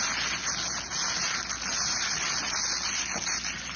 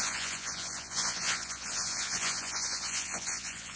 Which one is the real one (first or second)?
first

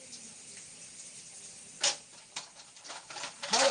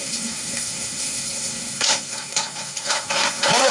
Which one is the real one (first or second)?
first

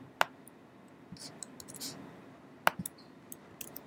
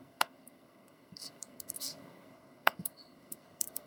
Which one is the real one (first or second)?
first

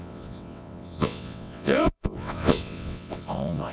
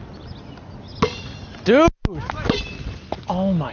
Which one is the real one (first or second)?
second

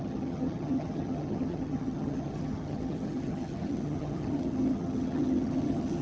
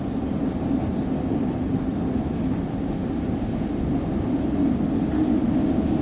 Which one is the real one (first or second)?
second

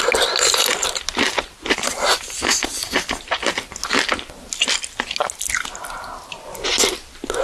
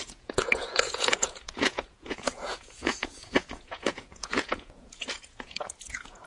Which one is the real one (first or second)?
first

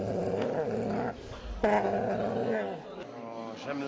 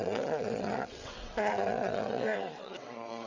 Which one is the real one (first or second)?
first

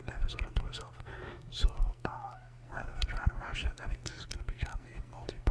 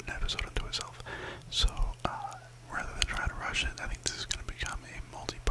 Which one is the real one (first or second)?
second